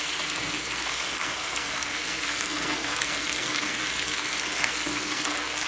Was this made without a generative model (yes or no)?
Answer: no